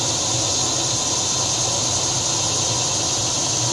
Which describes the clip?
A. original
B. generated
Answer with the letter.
A